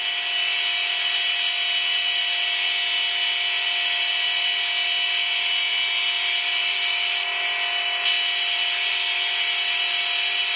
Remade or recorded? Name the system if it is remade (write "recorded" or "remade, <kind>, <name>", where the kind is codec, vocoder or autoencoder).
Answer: recorded